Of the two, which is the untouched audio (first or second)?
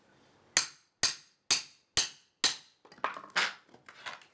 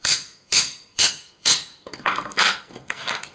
first